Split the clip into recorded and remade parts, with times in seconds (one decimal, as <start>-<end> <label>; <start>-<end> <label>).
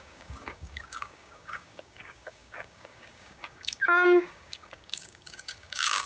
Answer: 0.0-6.1 remade